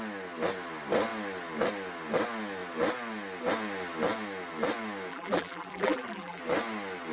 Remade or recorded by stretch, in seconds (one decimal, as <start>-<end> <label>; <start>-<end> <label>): 0.0-5.1 recorded; 5.1-6.4 remade; 6.4-7.1 recorded